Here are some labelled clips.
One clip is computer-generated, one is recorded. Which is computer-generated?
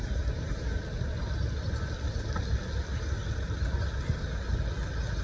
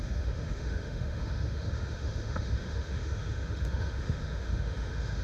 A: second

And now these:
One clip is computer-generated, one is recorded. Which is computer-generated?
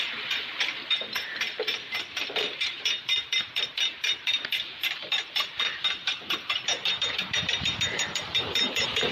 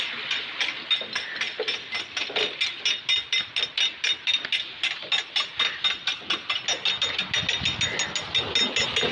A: first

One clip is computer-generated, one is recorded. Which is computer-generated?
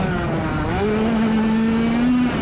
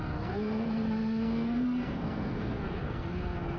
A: second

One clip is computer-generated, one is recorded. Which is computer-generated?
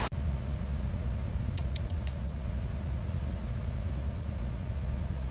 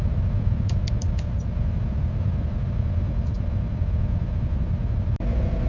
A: first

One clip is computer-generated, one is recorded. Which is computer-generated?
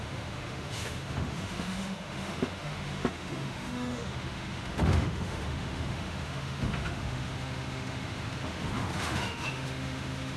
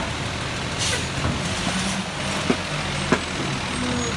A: first